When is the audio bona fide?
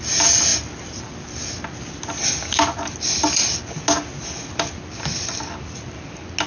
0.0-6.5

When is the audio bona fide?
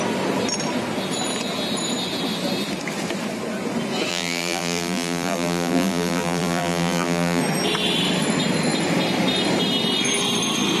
0.0-4.1; 7.4-10.8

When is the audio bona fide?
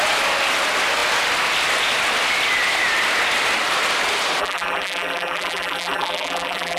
0.0-4.4